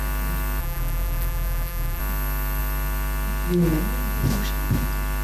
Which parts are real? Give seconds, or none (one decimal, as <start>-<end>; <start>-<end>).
0.0-0.6; 2.0-5.2